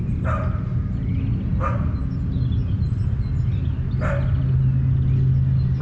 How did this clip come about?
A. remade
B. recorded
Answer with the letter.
B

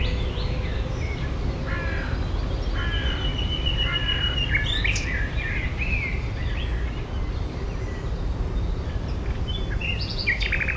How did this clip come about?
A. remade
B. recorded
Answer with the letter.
B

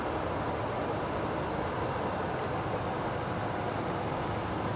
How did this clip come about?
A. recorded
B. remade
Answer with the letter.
A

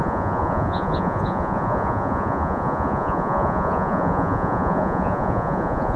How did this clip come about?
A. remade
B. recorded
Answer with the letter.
A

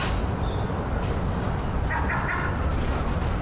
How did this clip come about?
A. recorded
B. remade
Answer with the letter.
A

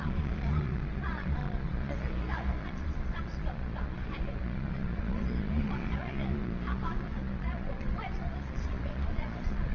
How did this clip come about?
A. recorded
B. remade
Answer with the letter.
B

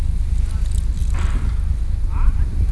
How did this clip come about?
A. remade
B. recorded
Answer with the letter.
B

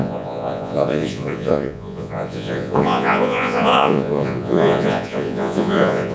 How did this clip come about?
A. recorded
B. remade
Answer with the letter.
B